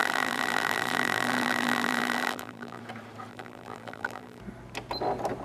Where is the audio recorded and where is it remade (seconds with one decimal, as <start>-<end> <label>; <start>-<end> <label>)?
0.0-2.8 remade; 2.8-3.3 recorded; 3.3-4.4 remade; 4.4-5.4 recorded